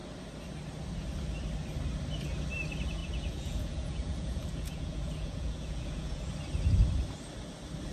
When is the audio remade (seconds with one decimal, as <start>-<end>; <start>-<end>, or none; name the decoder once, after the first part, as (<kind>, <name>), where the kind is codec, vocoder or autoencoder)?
3.0-6.3 (vocoder, Vocos)